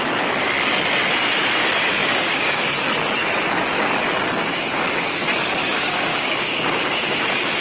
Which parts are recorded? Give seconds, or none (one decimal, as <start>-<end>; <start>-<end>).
0.0-2.0; 2.7-5.6